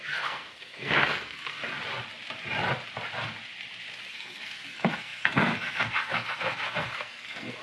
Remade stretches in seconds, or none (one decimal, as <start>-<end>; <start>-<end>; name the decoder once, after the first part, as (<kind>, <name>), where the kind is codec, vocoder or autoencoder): 0.0-1.6 (codec, SNAC); 4.1-7.6